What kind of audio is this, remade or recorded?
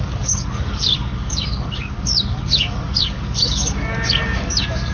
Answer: remade